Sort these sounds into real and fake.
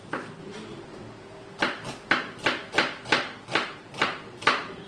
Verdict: real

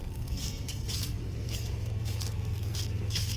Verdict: fake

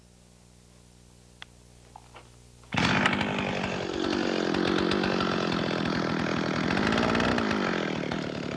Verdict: real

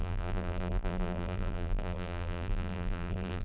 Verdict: fake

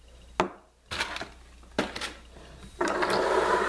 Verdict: real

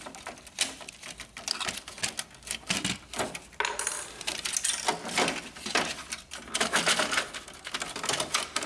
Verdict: real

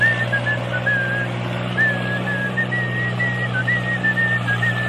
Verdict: real